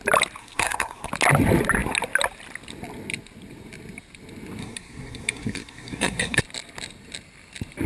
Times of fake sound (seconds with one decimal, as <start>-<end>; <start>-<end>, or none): 0.4-1.1; 4.6-6.4